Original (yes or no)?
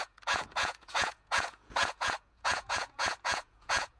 no